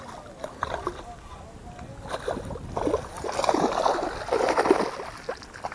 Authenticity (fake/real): real